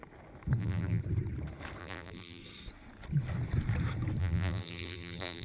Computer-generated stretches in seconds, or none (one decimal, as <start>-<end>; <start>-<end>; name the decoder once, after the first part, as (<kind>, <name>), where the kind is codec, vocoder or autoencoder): 0.6-1.0 (vocoder, BigVGAN v2); 1.8-2.4; 4.2-5.4